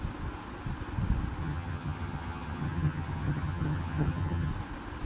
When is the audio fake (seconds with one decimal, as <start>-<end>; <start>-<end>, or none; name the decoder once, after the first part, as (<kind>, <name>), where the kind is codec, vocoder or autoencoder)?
1.4-4.5 (vocoder, HiFi-GAN)